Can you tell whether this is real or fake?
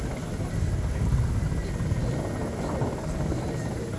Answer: real